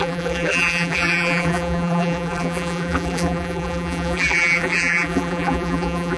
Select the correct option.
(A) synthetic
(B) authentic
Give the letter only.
A